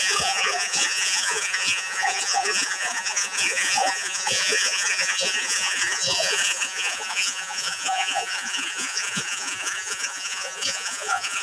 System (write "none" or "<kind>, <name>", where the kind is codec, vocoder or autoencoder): vocoder, Vocos